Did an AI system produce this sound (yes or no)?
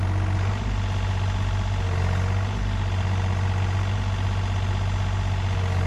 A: no